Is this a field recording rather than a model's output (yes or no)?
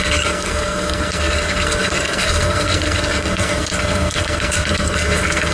no